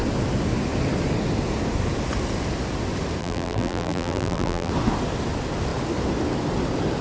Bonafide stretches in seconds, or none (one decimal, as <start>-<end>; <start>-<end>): 0.0-3.2; 4.7-7.0